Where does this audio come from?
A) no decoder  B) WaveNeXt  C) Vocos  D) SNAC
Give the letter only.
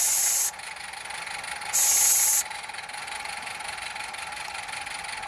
A